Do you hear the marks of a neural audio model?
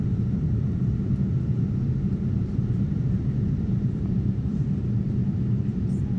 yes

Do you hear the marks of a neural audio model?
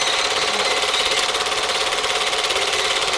yes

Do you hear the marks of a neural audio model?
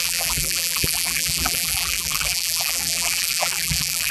yes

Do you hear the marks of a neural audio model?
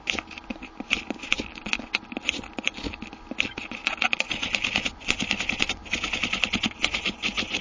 no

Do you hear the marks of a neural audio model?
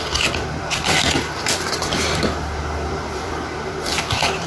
yes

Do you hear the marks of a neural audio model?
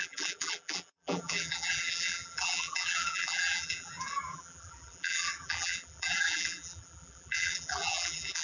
yes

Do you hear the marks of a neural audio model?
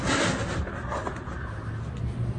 no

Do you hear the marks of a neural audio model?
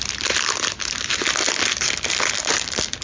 yes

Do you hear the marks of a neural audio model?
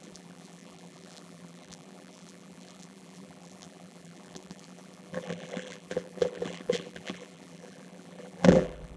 yes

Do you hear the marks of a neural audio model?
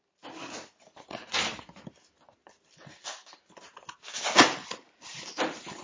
no